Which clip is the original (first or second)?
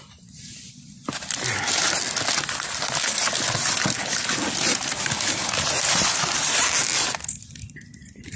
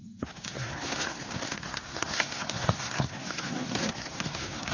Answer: first